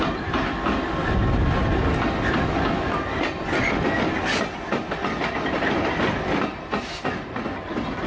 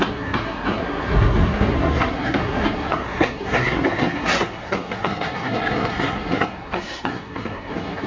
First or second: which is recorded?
first